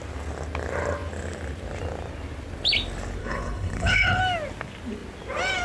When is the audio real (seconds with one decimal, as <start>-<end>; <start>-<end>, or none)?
0.0-3.2; 4.2-5.6